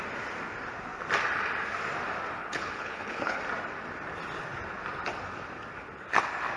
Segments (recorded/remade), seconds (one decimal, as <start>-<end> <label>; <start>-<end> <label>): 0.0-2.4 recorded; 2.4-3.4 remade; 3.4-6.6 recorded